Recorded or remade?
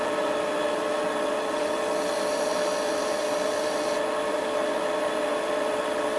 recorded